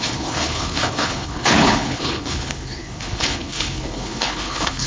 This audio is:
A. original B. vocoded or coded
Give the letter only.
B